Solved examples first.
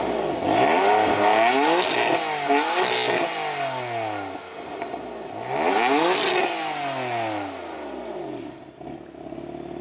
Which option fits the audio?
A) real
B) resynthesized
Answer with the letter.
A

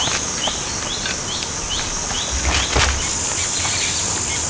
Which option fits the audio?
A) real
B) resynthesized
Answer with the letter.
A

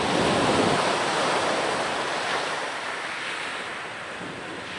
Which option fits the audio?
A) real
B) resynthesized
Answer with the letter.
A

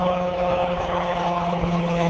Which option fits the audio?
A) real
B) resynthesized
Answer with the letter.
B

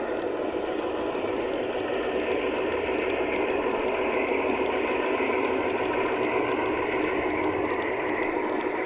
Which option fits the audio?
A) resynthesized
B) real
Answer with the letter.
B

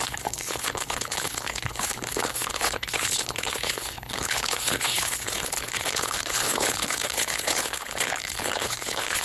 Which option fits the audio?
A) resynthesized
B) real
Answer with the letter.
A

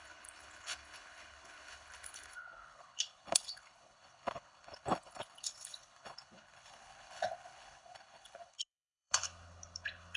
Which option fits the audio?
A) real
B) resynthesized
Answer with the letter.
B